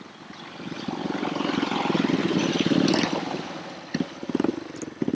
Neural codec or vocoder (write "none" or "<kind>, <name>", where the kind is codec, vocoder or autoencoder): none